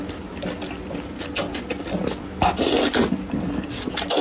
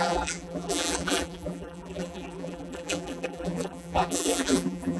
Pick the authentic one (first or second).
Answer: first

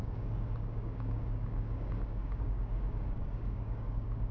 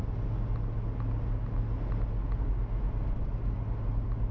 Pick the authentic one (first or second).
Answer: second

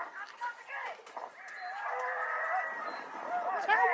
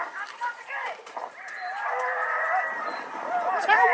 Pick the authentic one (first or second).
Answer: first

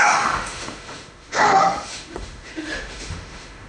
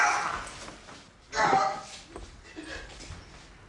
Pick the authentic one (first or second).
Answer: second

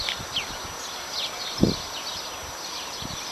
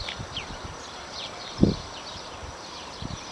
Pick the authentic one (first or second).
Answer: first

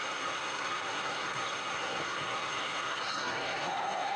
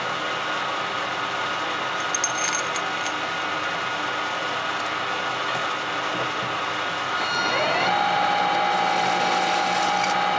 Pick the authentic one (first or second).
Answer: second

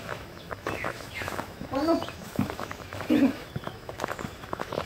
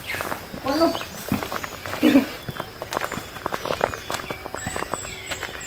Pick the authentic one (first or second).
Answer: second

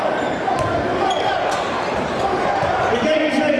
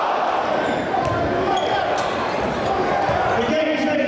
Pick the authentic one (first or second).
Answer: second